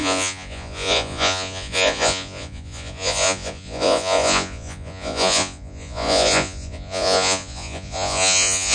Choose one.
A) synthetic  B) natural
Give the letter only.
A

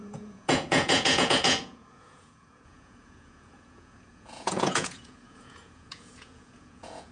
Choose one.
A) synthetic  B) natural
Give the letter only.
A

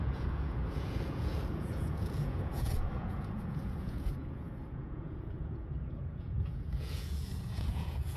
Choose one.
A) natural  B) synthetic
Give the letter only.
B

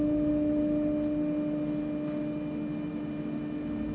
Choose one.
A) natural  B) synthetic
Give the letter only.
A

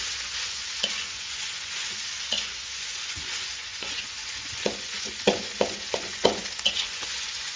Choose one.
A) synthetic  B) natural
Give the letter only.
A